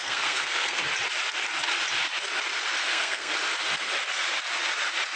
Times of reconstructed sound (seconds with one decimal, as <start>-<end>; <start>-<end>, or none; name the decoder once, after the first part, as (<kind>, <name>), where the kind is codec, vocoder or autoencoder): 0.0-0.8 (codec, SNAC); 2.8-3.3